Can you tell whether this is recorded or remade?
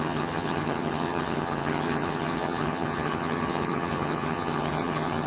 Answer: remade